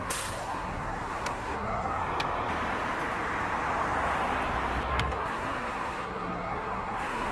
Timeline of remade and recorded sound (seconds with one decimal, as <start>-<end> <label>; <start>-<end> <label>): 0.0-2.0 remade; 2.0-4.9 recorded; 4.9-7.3 remade